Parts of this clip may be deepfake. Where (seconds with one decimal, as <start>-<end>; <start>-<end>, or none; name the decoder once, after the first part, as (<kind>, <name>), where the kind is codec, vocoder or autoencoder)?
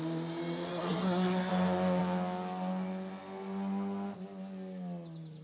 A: 0.7-1.5 (codec, SNAC)